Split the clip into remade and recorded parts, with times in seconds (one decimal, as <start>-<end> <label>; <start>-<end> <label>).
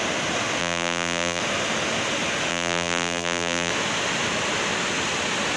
0.0-0.6 recorded; 0.6-1.4 remade; 1.4-2.5 recorded; 2.5-3.7 remade; 3.7-5.6 recorded